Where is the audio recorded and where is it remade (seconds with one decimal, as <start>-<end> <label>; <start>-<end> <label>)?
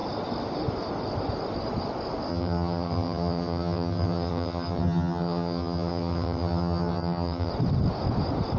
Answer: 0.0-2.3 recorded; 2.3-7.5 remade; 7.5-8.6 recorded